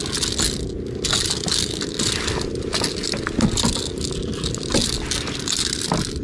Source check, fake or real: real